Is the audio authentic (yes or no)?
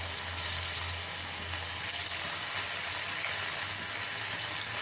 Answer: yes